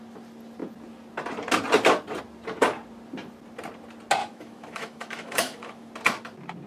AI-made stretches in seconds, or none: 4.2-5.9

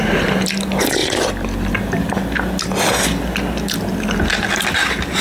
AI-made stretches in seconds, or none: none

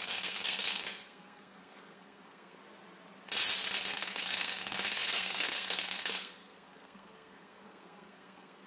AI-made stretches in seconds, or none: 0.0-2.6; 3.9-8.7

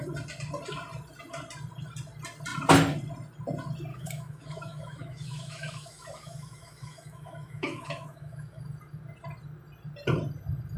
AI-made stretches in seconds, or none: 3.9-8.6